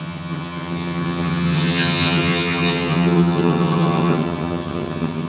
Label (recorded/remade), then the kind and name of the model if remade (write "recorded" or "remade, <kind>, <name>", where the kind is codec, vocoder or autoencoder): remade, vocoder, HiFi-GAN